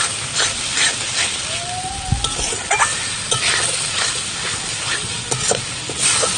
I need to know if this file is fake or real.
real